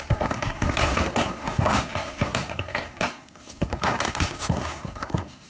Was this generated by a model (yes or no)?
yes